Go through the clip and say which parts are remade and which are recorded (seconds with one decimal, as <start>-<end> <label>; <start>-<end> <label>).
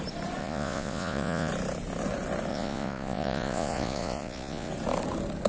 0.0-0.4 recorded; 0.4-1.5 remade; 1.5-2.5 recorded; 2.5-4.7 remade; 4.7-5.5 recorded